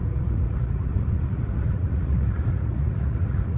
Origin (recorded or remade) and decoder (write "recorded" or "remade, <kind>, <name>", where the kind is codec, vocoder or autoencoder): remade, vocoder, Vocos